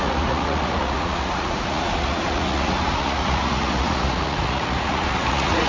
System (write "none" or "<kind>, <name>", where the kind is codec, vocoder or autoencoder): vocoder, Vocos